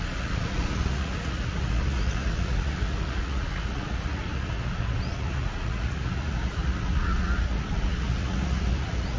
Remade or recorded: remade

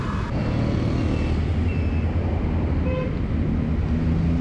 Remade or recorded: recorded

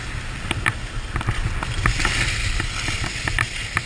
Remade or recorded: recorded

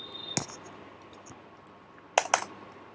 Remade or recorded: recorded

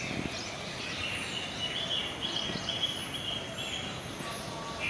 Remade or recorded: recorded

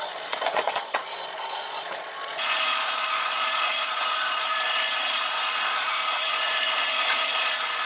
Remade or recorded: remade